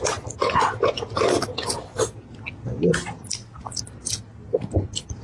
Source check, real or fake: real